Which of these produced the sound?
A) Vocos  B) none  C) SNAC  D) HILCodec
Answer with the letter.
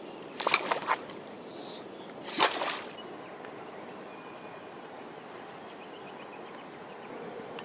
B